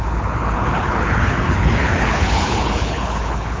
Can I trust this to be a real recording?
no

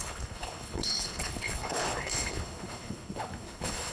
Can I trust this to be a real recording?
no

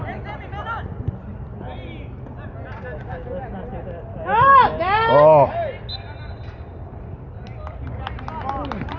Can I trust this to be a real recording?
yes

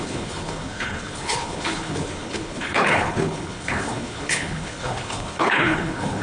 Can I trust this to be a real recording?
no